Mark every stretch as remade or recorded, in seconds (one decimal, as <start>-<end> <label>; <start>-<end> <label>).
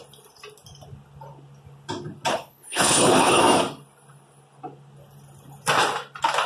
0.0-2.3 recorded; 2.3-3.4 remade; 3.4-6.5 recorded